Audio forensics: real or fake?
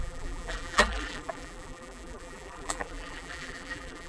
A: fake